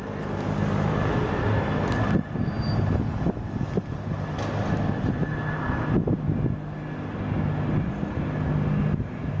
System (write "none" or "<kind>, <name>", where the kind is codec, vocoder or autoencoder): none